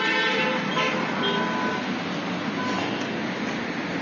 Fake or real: real